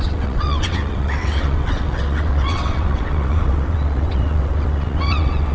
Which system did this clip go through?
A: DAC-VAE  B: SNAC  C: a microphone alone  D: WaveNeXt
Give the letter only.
D